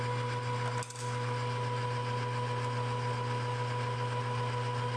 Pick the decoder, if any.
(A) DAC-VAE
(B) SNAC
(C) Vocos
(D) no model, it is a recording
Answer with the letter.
D